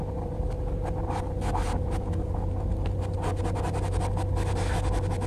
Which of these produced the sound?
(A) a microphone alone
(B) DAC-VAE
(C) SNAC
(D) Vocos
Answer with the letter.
A